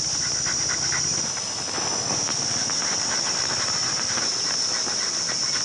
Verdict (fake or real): real